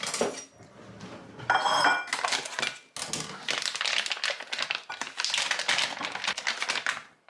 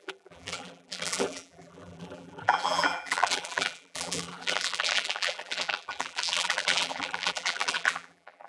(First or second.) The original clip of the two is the first